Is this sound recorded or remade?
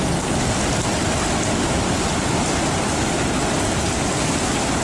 recorded